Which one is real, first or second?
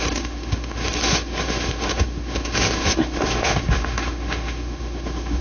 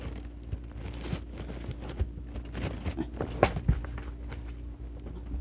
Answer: second